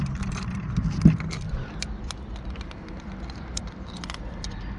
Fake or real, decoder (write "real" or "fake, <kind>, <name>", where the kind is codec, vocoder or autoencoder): real